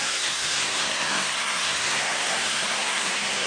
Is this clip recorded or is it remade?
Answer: remade